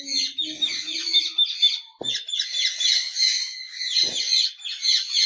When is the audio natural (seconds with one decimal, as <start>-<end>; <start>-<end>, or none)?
0.0-5.3